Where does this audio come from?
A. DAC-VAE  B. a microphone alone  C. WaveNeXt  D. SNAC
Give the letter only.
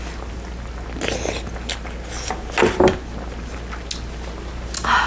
B